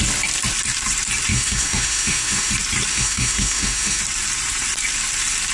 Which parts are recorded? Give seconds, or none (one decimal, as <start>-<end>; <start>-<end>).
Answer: 0.0-1.3; 2.5-2.9; 4.0-5.5

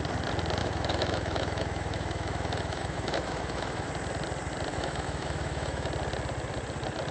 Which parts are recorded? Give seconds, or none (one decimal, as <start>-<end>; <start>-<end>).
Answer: 0.0-0.6; 3.9-4.7; 5.9-7.1

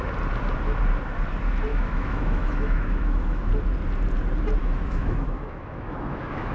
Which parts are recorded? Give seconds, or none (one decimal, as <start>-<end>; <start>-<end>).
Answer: 0.0-1.7; 3.5-4.6